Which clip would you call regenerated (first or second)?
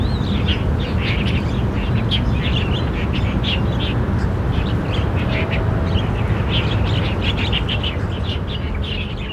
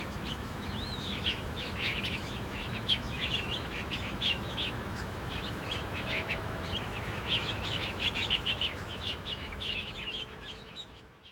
second